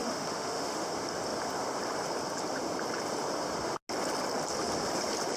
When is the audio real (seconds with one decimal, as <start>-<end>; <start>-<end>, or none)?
0.9-5.4